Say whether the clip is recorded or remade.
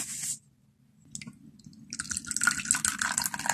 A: recorded